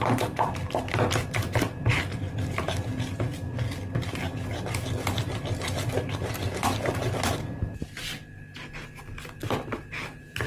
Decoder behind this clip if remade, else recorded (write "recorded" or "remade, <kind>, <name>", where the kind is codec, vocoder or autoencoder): recorded